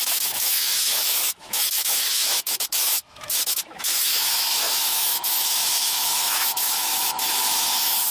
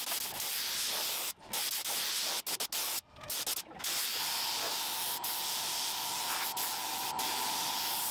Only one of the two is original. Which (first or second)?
second